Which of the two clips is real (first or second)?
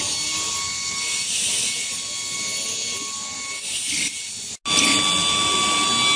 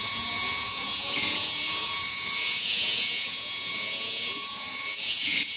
first